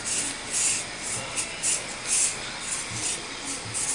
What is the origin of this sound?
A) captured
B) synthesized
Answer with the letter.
A